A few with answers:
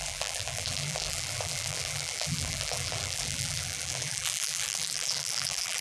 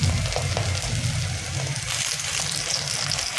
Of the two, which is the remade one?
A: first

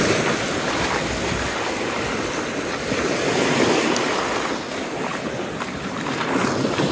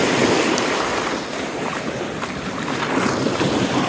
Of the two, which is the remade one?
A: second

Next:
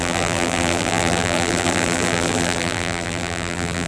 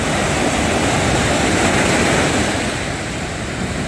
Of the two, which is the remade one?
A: first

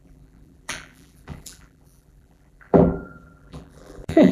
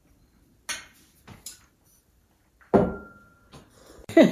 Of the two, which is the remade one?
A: first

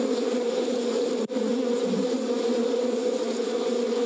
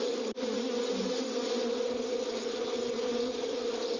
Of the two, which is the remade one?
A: first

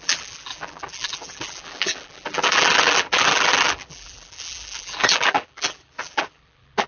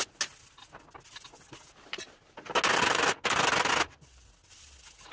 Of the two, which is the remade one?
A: first